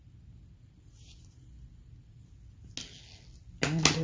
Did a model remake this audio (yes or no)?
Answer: no